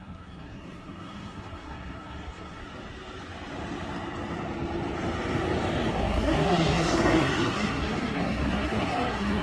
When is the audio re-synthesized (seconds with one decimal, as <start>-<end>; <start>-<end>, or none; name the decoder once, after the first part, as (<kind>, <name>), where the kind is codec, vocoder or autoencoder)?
0.0-2.6 (codec, SNAC); 5.9-9.4